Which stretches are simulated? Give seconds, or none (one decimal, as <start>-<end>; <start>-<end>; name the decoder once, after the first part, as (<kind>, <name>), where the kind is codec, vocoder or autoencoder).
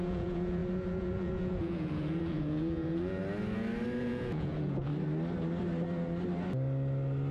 0.0-3.2 (vocoder, Vocos); 4.0-4.9